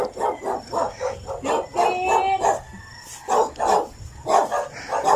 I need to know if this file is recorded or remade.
recorded